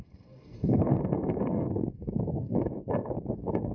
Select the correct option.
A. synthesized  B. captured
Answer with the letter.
A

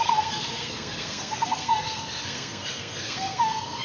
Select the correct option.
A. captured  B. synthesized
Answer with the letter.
B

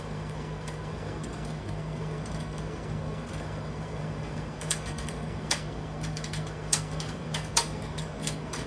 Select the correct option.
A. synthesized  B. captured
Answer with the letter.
A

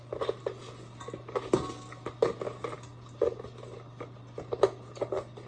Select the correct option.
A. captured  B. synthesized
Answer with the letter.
A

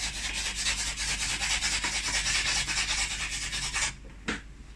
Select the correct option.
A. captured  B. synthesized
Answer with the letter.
A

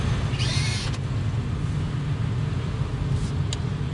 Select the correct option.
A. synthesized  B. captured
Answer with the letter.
B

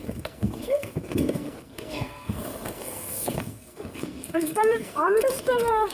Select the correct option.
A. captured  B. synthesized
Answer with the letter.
B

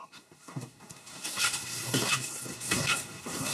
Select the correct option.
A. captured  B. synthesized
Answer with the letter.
B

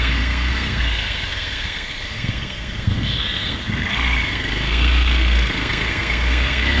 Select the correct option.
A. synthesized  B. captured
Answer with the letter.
A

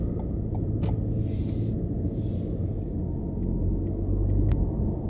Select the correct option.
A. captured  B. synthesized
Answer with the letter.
A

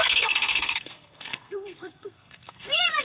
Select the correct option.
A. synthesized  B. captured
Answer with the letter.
A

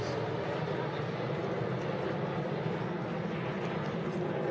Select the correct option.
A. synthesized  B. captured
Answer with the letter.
B